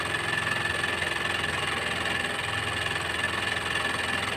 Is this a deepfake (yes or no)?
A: no